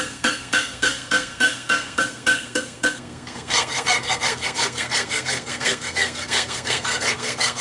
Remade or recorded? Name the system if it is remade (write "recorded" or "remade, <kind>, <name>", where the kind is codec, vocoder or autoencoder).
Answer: remade, codec, SNAC